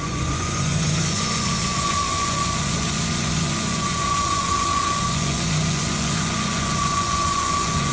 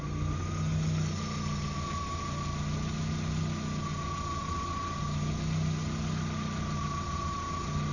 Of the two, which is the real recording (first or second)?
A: second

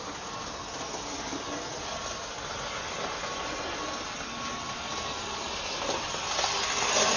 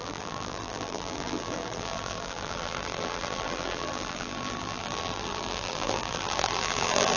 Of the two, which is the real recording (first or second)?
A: first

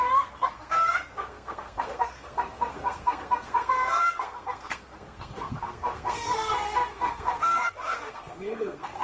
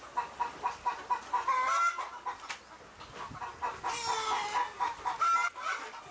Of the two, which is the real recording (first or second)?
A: second